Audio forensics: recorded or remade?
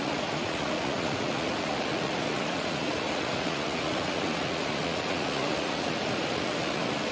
remade